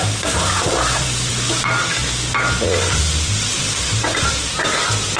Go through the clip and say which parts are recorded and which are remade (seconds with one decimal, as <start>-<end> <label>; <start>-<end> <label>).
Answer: 0.0-2.0 remade; 2.0-3.5 recorded; 3.5-5.2 remade